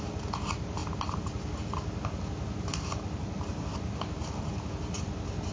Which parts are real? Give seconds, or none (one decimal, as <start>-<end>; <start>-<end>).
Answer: 0.0-2.7; 3.6-5.5